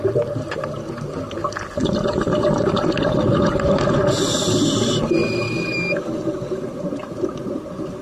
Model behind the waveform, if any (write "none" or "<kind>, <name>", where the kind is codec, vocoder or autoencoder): none